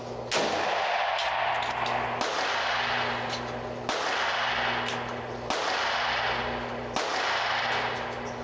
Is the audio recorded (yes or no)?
yes